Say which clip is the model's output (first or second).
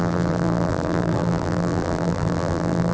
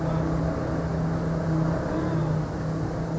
first